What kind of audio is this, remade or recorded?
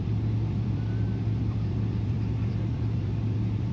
remade